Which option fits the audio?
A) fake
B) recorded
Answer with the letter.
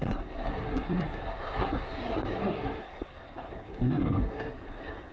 A